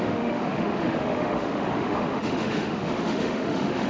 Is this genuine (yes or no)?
no